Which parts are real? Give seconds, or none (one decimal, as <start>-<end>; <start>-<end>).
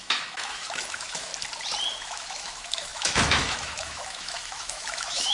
1.3-1.9